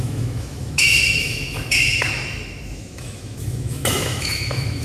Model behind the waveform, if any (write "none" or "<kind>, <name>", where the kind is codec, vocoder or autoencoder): autoencoder, DAC-VAE